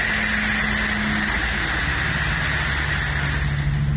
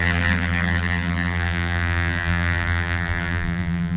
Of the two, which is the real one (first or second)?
first